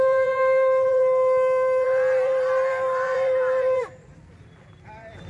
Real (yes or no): no